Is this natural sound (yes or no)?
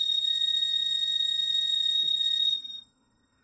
no